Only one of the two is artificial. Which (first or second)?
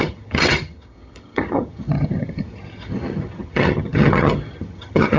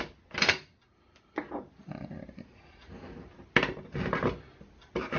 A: first